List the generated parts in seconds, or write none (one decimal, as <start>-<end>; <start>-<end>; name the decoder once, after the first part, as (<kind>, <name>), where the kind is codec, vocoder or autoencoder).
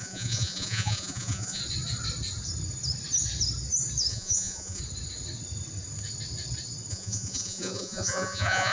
0.0-1.6 (vocoder, Vocos); 4.1-4.8; 6.9-8.7